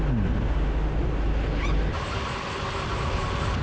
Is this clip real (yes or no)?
yes